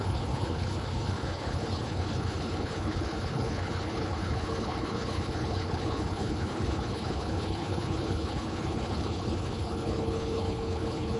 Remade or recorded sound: remade